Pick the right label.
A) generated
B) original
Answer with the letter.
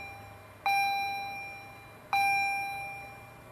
B